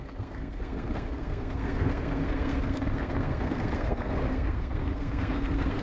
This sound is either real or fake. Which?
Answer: fake